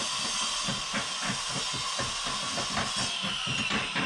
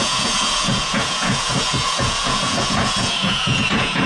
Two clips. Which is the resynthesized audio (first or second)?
second